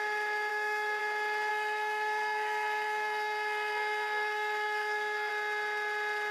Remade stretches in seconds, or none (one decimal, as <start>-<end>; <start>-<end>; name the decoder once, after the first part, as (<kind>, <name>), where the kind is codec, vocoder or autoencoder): 0.5-1.0 (codec, SNAC); 1.5-5.3